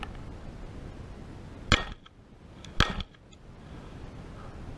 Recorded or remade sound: recorded